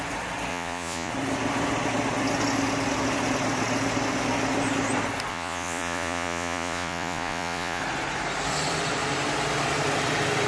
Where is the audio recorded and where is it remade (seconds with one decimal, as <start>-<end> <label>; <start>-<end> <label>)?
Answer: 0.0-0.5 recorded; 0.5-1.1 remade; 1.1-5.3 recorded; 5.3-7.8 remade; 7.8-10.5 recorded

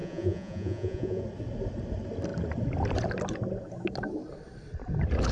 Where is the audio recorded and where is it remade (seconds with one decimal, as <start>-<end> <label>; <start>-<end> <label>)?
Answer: 0.0-1.2 remade; 1.2-5.3 recorded

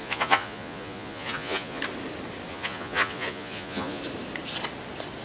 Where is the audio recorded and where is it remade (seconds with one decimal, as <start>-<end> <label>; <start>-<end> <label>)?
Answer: 0.0-1.8 remade; 1.8-2.5 recorded; 2.5-4.0 remade; 4.0-5.2 recorded

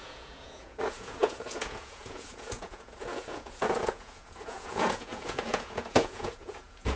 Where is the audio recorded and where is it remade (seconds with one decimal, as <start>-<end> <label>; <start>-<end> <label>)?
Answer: 0.0-7.0 remade

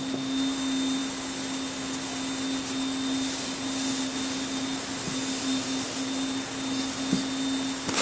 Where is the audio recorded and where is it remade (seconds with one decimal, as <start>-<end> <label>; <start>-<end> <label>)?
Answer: 0.0-8.0 recorded

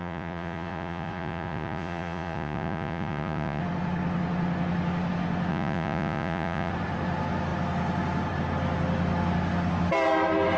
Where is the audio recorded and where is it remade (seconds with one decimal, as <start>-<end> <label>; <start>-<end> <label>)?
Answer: 0.0-3.6 remade; 3.6-5.5 recorded; 5.5-6.7 remade; 6.7-10.6 recorded